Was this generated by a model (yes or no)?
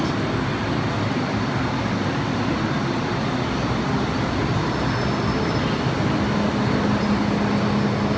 no